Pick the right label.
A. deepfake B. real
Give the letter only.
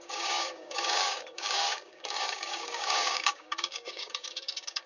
A